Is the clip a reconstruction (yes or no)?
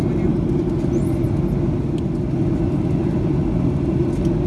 no